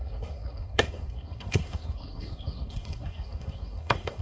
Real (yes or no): no